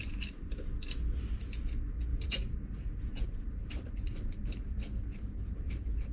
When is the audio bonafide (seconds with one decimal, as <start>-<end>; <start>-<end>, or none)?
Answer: 0.0-2.1; 4.7-6.1